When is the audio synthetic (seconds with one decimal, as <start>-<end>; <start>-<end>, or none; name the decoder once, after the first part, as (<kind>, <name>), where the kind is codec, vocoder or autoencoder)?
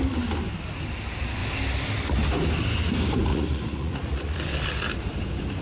3.3-4.4 (vocoder, Vocos)